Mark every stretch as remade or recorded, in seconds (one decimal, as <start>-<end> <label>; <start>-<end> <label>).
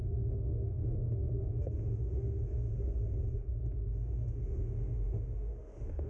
0.0-2.7 remade; 2.7-3.3 recorded; 3.3-6.1 remade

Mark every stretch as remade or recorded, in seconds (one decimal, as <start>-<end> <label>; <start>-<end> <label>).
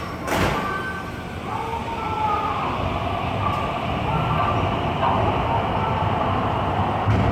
0.0-7.3 recorded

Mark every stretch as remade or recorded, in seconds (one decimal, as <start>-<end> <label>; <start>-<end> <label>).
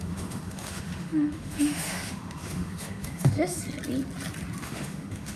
0.0-3.6 remade; 3.6-4.6 recorded; 4.6-5.4 remade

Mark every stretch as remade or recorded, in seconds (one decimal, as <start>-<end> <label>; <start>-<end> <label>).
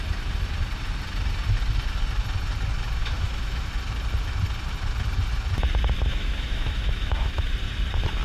0.0-3.0 recorded; 3.0-3.7 remade; 3.7-6.1 recorded; 6.1-7.5 remade; 7.5-8.2 recorded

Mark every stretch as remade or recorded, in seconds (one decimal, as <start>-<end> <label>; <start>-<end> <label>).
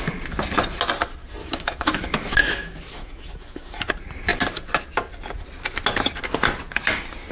0.0-1.4 recorded; 1.4-3.9 remade; 3.9-7.3 recorded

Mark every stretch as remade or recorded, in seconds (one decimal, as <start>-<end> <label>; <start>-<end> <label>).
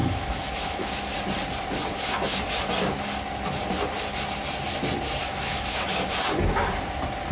0.0-1.0 remade; 1.0-5.2 recorded; 5.2-6.1 remade; 6.1-7.3 recorded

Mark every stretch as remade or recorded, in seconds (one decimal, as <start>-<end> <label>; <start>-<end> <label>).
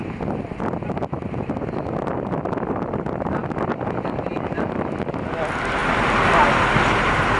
0.0-7.4 recorded